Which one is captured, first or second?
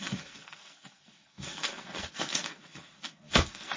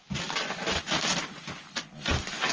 second